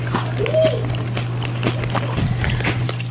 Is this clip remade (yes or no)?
no